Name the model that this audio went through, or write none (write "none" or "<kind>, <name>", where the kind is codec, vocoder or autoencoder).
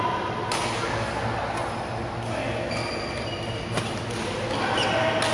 none